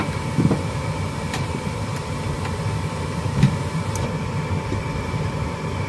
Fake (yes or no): yes